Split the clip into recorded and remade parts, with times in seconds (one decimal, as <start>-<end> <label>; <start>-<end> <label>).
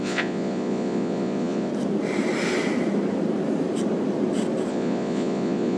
0.0-1.7 remade; 1.7-4.7 recorded; 4.7-5.8 remade